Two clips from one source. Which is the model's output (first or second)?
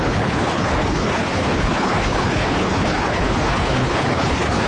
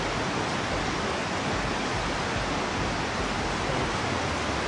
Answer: first